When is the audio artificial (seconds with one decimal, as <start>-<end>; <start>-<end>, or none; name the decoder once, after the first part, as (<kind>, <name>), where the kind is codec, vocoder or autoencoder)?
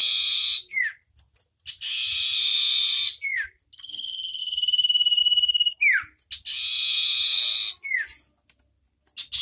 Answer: 0.0-0.9 (vocoder, BigVGAN v2); 2.1-3.6; 4.4-5.2